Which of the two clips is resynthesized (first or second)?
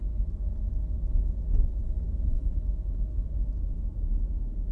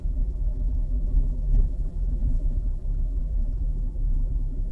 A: second